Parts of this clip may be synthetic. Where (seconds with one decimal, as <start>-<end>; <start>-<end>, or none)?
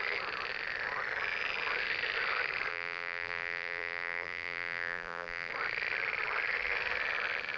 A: 2.7-5.5